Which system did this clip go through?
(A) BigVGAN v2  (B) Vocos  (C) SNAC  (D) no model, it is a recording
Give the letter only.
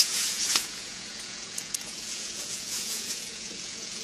B